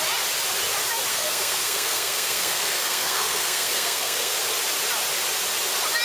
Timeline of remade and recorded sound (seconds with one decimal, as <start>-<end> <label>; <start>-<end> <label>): 0.0-1.1 recorded; 1.1-4.4 remade; 4.4-6.0 recorded

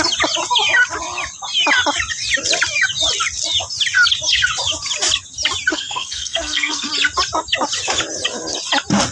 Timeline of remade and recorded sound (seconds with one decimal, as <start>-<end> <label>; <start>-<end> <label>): 0.0-5.7 recorded; 5.7-6.9 remade; 6.9-9.1 recorded